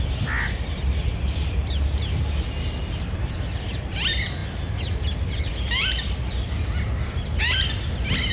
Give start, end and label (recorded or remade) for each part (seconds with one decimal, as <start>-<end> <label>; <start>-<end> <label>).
0.0-8.3 recorded